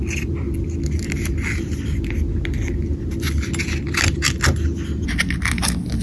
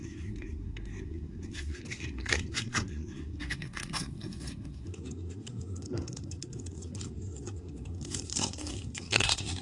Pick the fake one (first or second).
second